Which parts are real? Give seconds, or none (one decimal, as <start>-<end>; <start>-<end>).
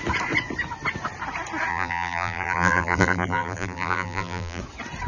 0.0-1.7; 4.6-5.1